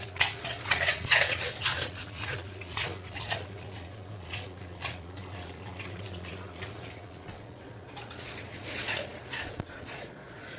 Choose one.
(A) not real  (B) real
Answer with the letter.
A